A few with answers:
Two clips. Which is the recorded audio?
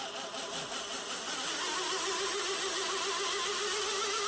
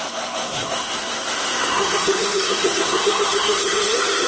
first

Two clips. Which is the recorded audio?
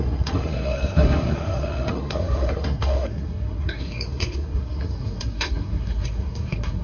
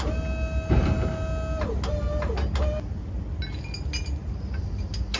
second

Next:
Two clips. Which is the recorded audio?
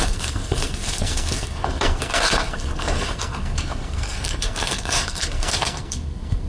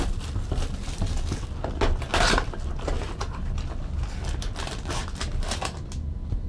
second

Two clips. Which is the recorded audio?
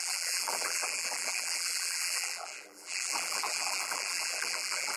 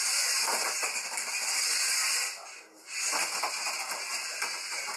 second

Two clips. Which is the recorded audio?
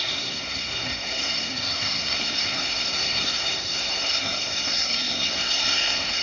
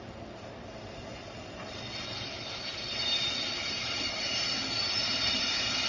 second